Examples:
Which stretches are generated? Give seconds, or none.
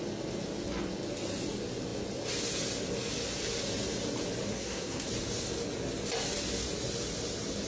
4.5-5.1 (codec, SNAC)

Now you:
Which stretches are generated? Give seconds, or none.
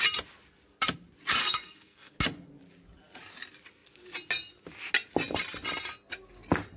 1.4-2.1 (codec, SNAC)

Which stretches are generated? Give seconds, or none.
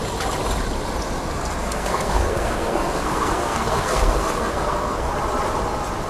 1.6-5.1 (codec, SNAC)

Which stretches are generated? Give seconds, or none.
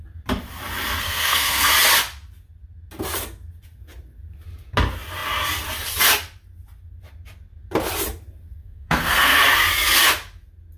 1.0-1.7 (codec, SNAC); 8.5-9.4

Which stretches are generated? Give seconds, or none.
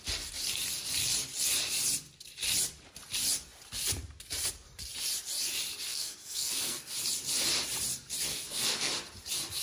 5.9-6.9 (codec, SNAC); 8.3-8.9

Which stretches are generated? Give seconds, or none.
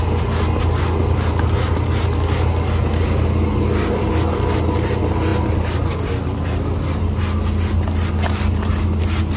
none